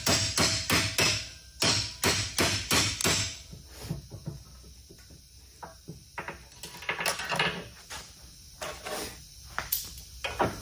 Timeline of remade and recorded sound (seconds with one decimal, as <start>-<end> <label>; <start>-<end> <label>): 0.0-10.6 recorded